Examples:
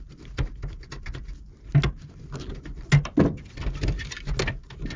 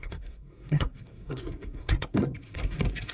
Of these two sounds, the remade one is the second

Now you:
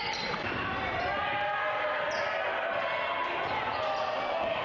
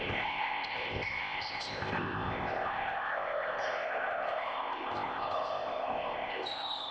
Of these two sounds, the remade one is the second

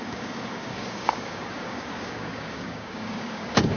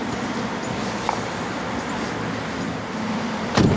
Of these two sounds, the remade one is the first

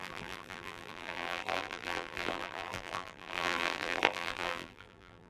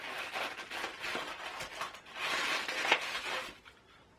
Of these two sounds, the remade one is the first